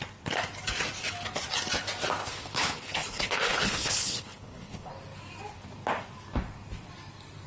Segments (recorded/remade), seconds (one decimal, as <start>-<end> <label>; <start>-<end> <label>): 0.0-2.2 recorded; 2.2-4.9 remade; 4.9-7.5 recorded